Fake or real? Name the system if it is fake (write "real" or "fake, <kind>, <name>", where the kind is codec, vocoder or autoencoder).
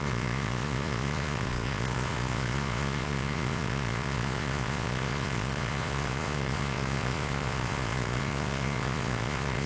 fake, vocoder, Vocos